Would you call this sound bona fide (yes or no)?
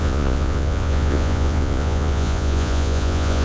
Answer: no